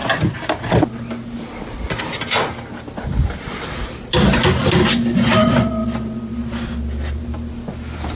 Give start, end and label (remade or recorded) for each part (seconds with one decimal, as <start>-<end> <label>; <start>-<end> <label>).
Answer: 0.0-8.2 recorded